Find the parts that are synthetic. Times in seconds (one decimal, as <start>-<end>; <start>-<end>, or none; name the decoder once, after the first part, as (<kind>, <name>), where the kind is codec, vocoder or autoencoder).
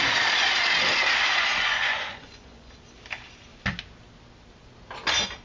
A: 1.3-2.7 (vocoder, Vocos)